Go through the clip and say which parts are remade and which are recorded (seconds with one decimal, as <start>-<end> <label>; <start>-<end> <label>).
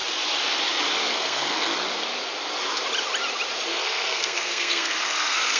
0.0-1.0 recorded; 1.0-1.7 remade; 1.7-3.7 recorded; 3.7-5.6 remade